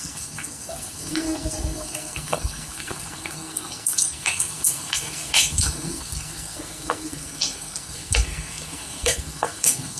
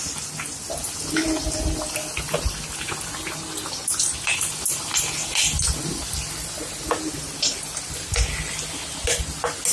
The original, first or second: second